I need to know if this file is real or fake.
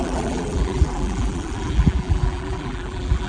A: fake